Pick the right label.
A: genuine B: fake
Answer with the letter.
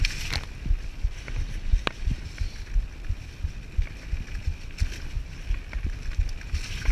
A